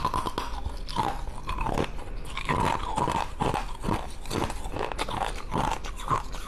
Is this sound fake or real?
real